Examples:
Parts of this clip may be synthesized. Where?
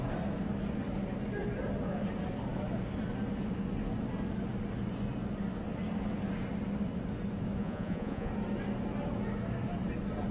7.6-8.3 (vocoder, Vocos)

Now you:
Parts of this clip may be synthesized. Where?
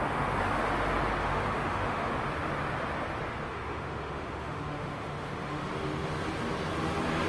1.2-2.1 (autoencoder, DAC-VAE); 3.5-5.6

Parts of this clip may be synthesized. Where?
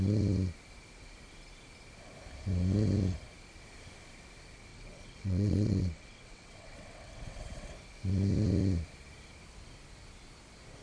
4.7-7.7 (vocoder, WaveNeXt)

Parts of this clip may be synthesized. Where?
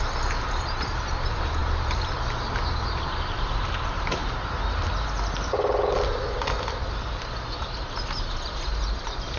0.0-4.2 (vocoder, BigVGAN v2); 7.6-9.4